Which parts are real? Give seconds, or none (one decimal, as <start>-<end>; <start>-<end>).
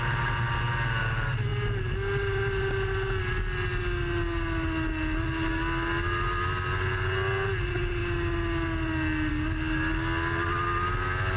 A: 0.0-11.4